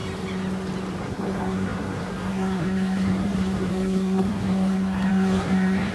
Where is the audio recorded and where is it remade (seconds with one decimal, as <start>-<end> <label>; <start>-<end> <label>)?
0.0-1.0 recorded; 1.0-5.9 remade